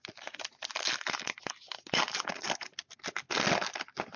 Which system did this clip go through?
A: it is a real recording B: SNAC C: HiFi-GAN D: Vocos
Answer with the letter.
A